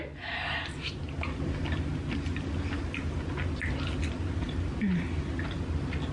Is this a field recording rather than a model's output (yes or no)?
yes